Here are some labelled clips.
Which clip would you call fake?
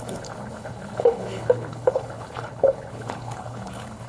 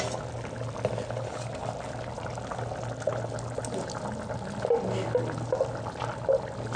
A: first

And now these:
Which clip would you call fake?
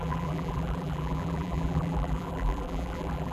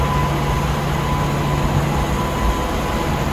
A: first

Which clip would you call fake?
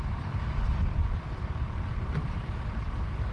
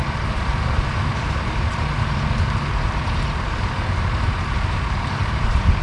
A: second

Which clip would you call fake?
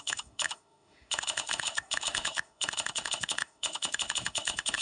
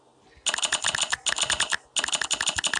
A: first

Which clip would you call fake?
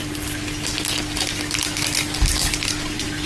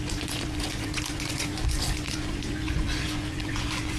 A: second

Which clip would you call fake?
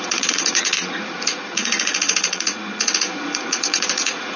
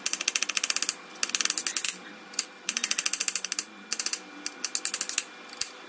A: first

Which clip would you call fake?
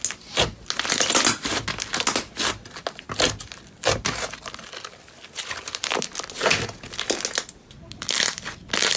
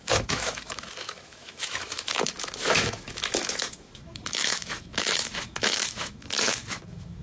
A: second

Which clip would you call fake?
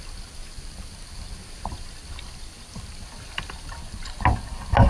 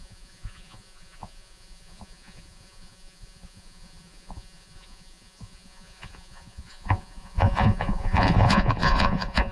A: second